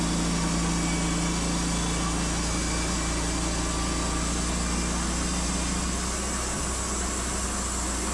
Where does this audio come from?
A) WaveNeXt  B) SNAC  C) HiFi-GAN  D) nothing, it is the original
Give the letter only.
D